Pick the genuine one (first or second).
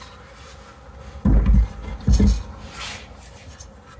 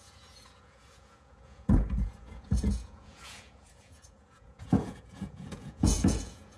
first